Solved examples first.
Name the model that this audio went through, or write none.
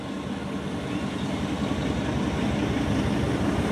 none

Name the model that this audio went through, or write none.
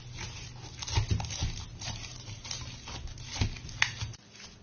none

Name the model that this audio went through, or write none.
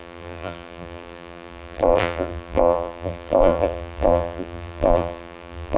vocoder, BigVGAN v2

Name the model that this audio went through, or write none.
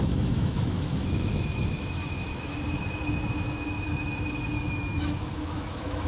autoencoder, DAC-VAE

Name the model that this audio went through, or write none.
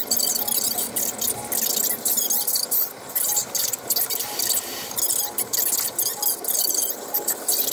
none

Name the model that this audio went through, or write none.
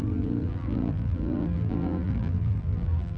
vocoder, BigVGAN v2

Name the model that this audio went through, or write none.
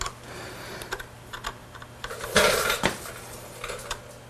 none